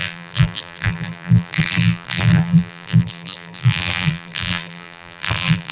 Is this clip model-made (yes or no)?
yes